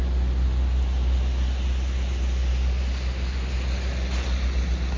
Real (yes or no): yes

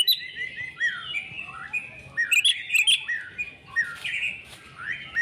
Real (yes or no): yes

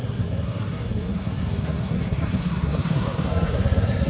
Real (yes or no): no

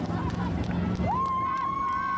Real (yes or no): yes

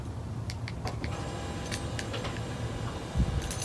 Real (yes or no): yes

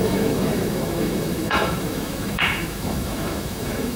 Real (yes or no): no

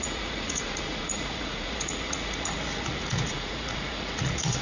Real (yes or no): no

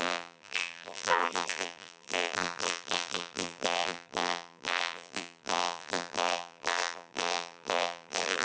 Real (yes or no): no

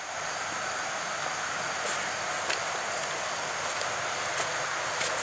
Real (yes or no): yes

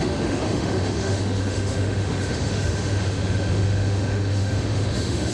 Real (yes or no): no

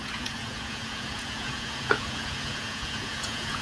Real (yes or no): no